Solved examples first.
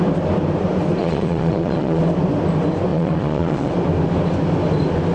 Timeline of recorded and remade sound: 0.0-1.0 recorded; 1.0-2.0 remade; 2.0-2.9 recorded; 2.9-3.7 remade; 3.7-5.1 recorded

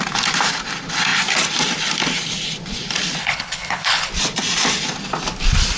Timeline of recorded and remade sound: 0.0-3.2 recorded; 3.2-4.1 remade; 4.1-5.8 recorded

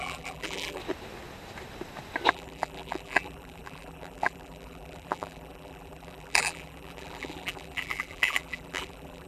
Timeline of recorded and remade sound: 0.0-0.8 remade; 0.8-2.3 recorded; 2.3-9.3 remade

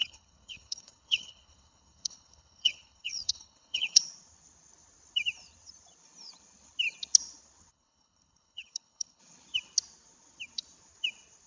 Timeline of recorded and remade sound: 0.0-4.0 remade; 4.0-7.7 recorded; 7.7-9.2 remade; 9.2-11.5 recorded

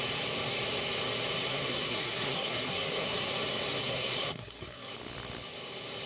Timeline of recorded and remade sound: 0.0-1.5 recorded; 1.5-3.3 remade; 3.3-3.8 recorded; 3.8-4.9 remade; 4.9-6.1 recorded

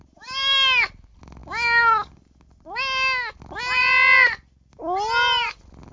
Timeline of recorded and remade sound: 0.0-5.9 recorded

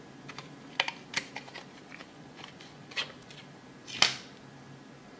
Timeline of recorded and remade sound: 0.0-2.0 recorded; 2.0-3.4 remade; 3.4-5.2 recorded